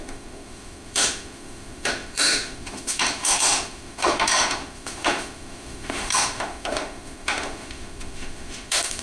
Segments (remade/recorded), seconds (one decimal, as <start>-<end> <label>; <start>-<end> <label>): 0.0-9.0 remade